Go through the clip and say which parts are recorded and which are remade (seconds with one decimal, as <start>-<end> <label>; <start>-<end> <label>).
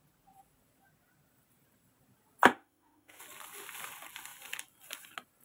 0.0-2.5 recorded; 2.5-3.2 remade; 3.2-5.4 recorded